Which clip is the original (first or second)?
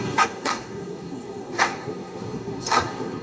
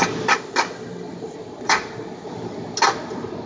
second